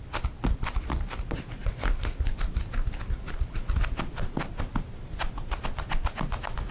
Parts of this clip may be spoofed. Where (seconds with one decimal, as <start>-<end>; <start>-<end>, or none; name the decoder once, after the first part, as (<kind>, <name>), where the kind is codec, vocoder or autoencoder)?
none